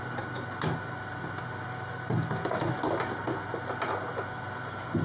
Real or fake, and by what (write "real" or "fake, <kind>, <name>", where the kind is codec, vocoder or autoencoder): real